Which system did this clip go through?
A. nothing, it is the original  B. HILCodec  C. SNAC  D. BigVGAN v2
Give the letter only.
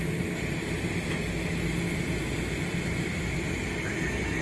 A